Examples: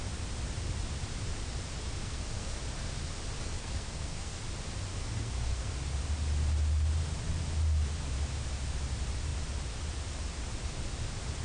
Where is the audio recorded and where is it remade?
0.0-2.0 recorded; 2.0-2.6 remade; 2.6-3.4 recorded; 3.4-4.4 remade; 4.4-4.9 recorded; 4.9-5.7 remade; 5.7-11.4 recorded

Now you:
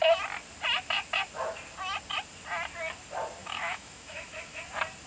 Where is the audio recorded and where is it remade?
0.0-3.4 recorded; 3.4-4.6 remade; 4.6-5.1 recorded

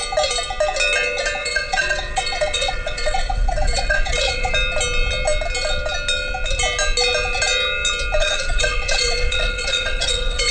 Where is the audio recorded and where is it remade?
0.0-1.4 recorded; 1.4-4.5 remade; 4.5-8.2 recorded; 8.2-10.5 remade

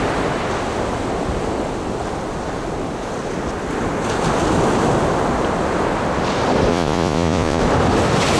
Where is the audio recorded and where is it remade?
0.0-6.7 recorded; 6.7-7.6 remade; 7.6-8.4 recorded

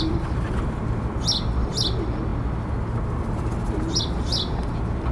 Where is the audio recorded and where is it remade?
0.0-5.1 recorded

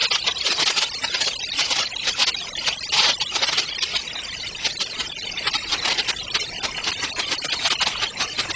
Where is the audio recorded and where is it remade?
0.0-8.6 recorded

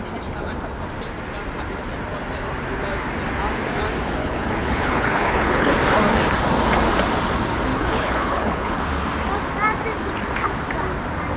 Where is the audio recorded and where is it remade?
0.0-4.2 recorded; 4.2-5.7 remade; 5.7-7.7 recorded; 7.7-8.8 remade; 8.8-11.4 recorded

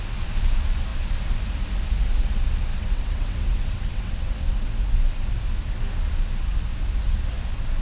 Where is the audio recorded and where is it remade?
0.0-2.7 recorded; 2.7-4.1 remade; 4.1-7.8 recorded